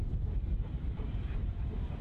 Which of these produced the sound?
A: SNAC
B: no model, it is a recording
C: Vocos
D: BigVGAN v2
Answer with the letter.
B